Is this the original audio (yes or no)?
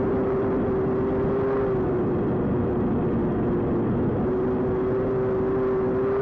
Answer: yes